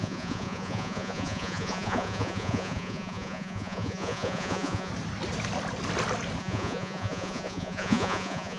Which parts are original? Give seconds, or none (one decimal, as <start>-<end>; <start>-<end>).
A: 4.9-6.4

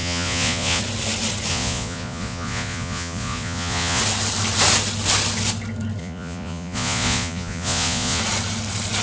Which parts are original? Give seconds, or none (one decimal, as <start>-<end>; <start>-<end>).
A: 0.8-1.5; 4.0-6.0; 8.2-9.0

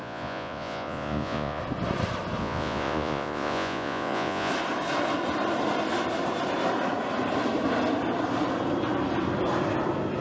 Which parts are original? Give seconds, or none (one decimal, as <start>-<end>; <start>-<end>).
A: 1.6-2.4; 4.5-10.2

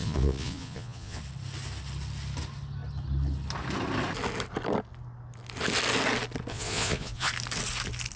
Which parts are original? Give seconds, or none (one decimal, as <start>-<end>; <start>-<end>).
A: 1.2-6.5; 7.3-8.2

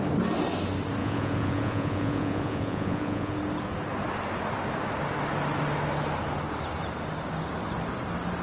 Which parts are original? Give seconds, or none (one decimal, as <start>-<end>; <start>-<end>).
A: 0.0-1.0; 3.3-8.4